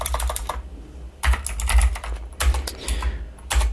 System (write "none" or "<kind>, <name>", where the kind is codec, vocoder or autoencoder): none